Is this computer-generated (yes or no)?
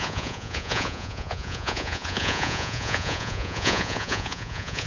yes